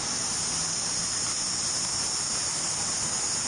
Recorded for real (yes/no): yes